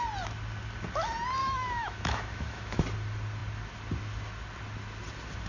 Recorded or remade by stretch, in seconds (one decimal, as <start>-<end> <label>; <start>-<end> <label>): 0.0-1.4 recorded; 1.4-2.8 remade; 2.8-5.5 recorded